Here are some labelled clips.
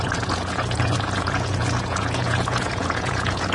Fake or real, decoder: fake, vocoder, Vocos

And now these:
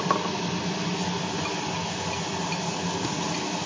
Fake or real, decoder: real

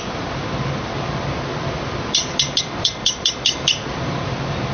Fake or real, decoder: real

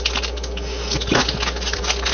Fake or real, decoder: real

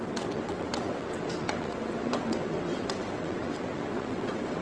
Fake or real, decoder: fake, vocoder, WaveNeXt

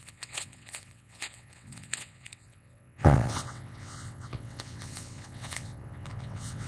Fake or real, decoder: fake, vocoder, WaveNeXt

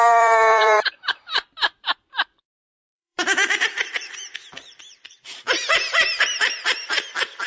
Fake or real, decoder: fake, vocoder, BigVGAN v2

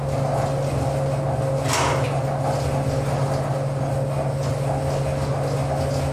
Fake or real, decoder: real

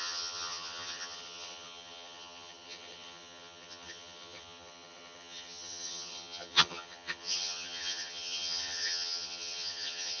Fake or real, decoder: fake, vocoder, HiFi-GAN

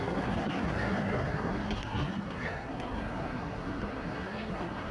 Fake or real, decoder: fake, codec, SNAC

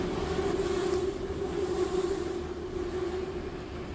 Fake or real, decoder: real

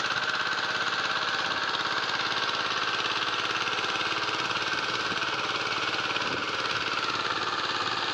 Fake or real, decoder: real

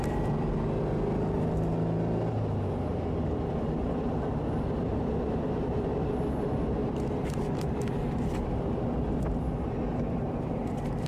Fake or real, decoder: real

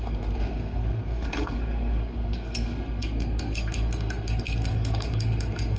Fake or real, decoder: fake, codec, SNAC